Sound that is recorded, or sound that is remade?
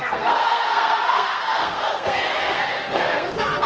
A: remade